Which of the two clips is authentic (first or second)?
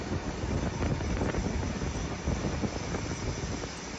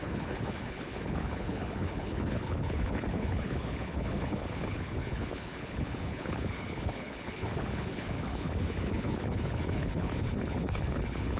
first